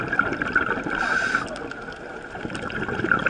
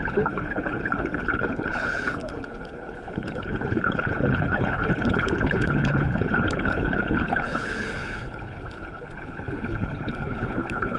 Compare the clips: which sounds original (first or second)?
first